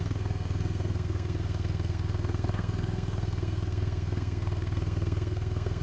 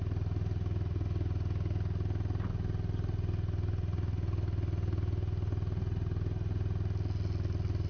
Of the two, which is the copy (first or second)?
first